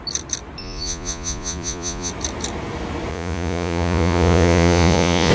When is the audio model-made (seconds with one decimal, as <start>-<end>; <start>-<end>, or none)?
0.6-2.1; 3.1-5.3

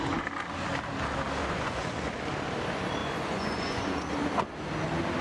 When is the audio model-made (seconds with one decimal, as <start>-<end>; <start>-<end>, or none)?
1.4-2.2; 3.0-4.1

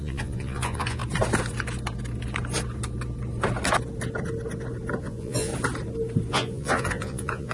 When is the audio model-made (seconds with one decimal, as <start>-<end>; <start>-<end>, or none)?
0.0-1.0; 5.0-5.5; 6.3-7.5

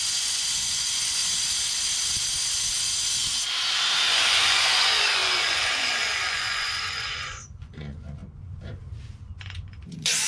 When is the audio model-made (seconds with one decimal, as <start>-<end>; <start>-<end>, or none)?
0.0-1.2; 4.1-8.2; 9.2-10.3

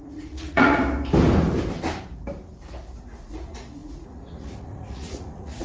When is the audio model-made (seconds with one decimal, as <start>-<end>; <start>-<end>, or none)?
0.0-0.8; 3.0-5.6

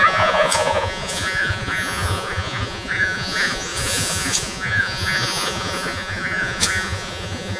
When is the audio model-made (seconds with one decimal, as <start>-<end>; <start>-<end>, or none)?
0.0-7.6

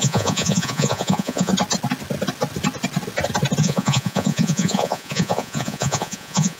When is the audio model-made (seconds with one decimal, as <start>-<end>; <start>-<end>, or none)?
0.0-1.5; 3.6-6.6

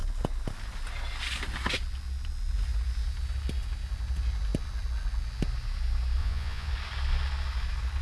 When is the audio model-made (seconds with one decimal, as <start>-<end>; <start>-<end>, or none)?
6.2-6.7